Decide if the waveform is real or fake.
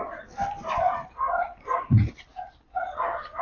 fake